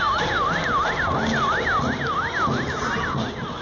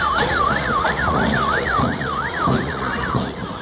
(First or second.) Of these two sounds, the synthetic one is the second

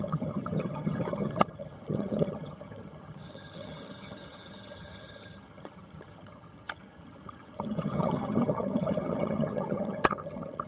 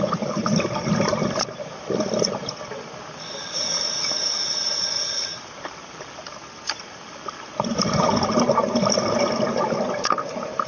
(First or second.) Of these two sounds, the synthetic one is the first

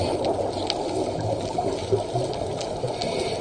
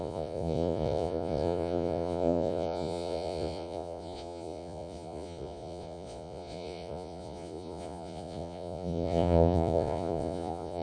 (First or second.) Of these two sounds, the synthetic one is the second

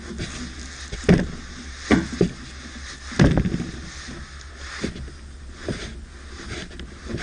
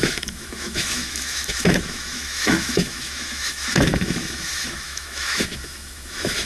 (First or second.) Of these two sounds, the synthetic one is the second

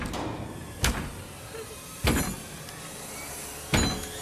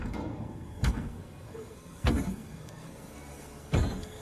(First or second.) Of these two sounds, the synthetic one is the second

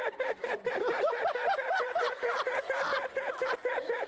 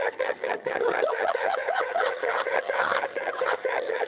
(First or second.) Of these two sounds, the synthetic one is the second